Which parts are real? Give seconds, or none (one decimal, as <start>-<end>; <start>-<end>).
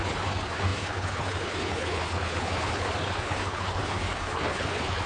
none